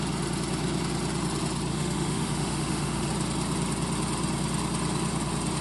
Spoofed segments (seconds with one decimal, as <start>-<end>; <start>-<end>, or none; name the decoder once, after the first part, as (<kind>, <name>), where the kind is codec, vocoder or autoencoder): 1.7-3.1 (autoencoder, DAC-VAE)